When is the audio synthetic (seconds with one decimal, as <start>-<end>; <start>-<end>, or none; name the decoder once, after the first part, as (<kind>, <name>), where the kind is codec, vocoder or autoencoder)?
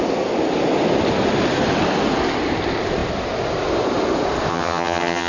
4.5-5.3 (vocoder, HiFi-GAN)